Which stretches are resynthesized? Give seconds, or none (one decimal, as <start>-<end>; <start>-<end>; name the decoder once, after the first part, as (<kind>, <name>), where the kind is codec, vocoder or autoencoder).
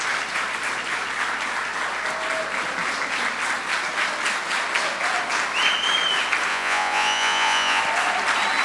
6.5-7.8 (vocoder, Vocos)